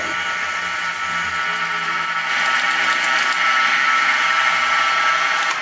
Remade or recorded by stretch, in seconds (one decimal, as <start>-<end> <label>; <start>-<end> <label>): 0.0-5.6 recorded